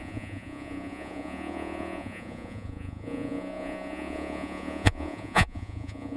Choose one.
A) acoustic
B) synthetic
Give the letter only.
B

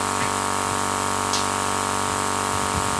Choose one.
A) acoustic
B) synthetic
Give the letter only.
A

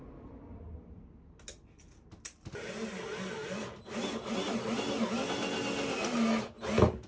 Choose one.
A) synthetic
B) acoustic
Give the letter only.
B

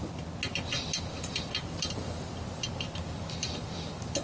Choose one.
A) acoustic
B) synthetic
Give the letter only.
A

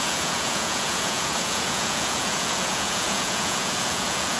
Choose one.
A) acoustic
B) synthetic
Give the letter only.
B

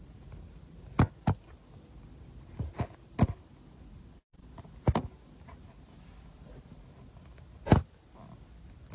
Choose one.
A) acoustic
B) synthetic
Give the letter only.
A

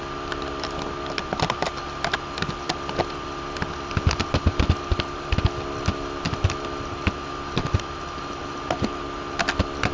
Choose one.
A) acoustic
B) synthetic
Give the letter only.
A